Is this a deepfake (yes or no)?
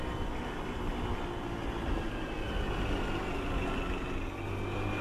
no